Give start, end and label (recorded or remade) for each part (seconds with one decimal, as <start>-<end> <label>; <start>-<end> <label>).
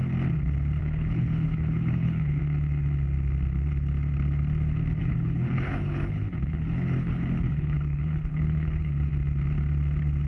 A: 0.0-0.8 recorded; 0.8-2.4 remade; 2.4-5.0 recorded; 5.0-9.1 remade; 9.1-10.3 recorded